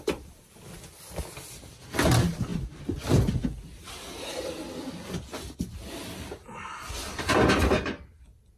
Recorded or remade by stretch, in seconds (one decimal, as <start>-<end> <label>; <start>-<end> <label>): 0.0-8.6 recorded